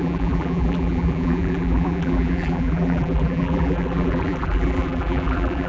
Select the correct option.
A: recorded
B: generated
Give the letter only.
B